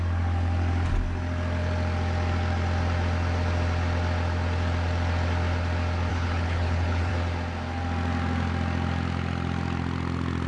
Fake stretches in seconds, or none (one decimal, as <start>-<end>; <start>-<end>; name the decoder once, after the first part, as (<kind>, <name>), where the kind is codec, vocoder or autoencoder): 6.1-7.1 (codec, HILCodec)